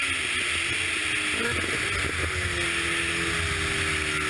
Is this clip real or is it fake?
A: real